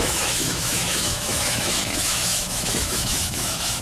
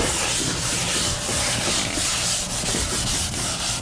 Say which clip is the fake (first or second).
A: first